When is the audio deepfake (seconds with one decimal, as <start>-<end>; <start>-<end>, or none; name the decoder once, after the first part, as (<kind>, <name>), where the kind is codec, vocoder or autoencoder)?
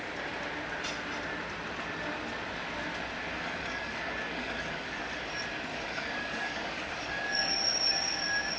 3.3-5.3 (codec, DAC); 5.7-7.6